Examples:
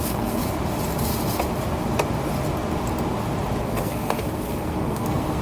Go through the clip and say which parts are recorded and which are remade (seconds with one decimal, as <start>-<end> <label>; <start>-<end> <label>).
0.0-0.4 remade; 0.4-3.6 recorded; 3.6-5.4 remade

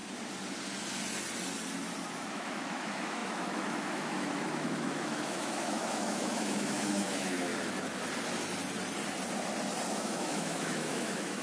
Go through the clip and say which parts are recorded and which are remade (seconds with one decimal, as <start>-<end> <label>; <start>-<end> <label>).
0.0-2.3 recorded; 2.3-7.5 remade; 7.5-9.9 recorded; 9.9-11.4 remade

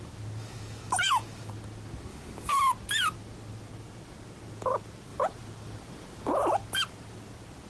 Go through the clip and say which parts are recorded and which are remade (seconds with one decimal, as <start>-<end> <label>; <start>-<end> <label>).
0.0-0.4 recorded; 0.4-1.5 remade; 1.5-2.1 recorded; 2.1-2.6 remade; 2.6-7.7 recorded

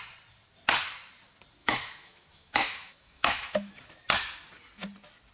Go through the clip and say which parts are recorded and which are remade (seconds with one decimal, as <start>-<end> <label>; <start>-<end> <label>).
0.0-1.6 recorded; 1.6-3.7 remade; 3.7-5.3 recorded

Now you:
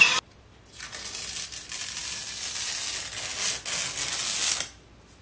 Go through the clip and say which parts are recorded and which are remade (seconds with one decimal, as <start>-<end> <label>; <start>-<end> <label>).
0.0-5.2 recorded